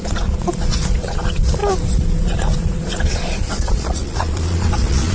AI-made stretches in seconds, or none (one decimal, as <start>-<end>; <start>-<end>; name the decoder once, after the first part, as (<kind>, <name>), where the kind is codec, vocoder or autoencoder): 0.0-1.6 (vocoder, Vocos); 2.2-5.1